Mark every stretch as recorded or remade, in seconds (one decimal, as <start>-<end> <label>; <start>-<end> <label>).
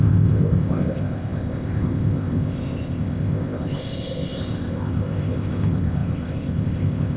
0.0-7.2 remade